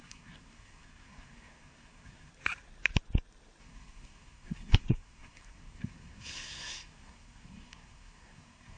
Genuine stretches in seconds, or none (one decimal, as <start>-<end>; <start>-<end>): 2.3-3.6